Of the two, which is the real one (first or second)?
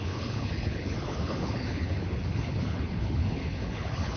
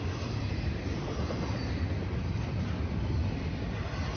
second